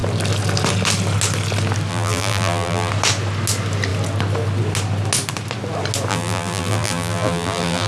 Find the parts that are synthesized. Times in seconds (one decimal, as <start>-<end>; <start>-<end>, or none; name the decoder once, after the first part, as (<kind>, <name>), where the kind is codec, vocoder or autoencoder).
1.9-2.9 (vocoder, BigVGAN v2); 6.1-7.9